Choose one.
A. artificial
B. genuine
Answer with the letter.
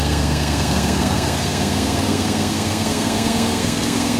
A